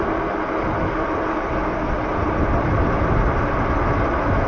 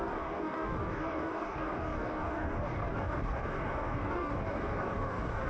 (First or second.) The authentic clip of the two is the first